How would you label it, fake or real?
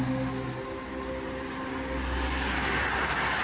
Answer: real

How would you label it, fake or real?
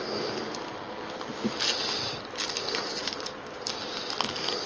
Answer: real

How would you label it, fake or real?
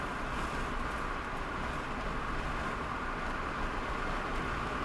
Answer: real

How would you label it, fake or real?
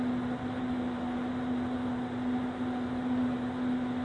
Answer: real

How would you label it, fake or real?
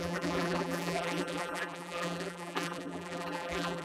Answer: fake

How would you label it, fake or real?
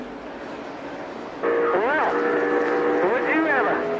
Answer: real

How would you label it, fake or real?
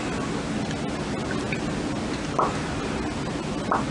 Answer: real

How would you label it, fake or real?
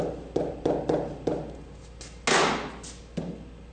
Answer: real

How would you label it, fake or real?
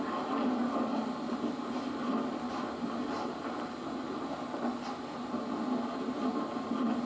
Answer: real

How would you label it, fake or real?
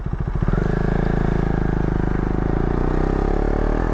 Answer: real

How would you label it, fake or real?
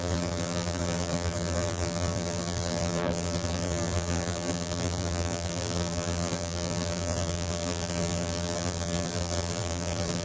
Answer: fake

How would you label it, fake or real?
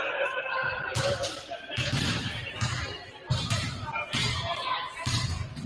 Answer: fake